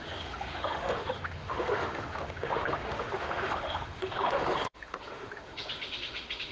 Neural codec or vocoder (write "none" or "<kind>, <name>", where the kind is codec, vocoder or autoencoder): autoencoder, DAC-VAE